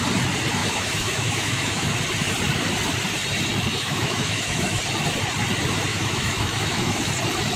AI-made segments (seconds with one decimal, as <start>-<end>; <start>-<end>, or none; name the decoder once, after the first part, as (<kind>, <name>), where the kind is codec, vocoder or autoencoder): 0.6-2.0 (autoencoder, DAC-VAE); 3.7-4.8; 5.9-7.1